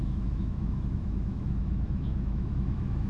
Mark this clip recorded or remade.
remade